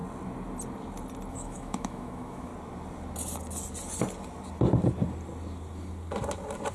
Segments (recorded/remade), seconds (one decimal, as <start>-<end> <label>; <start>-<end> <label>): 0.0-1.3 recorded; 1.3-2.5 remade; 2.5-6.7 recorded